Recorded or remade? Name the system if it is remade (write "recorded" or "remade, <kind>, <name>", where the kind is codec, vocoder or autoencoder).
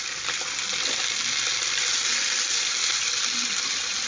recorded